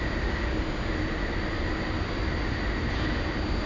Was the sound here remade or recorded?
recorded